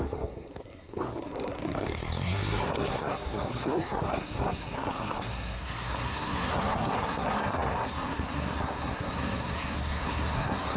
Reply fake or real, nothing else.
fake